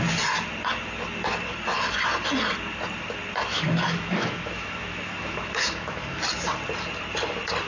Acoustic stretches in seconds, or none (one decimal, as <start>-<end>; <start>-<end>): 0.0-3.5; 6.2-7.7